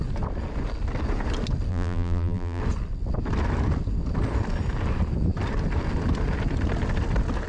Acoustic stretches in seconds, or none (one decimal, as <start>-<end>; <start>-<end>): 0.0-1.7; 2.6-7.5